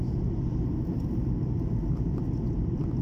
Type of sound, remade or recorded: recorded